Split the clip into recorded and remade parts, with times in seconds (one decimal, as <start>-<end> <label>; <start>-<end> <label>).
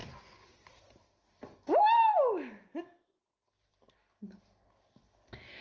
0.0-5.6 recorded